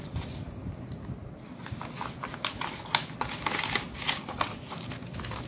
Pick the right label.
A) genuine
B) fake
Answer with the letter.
A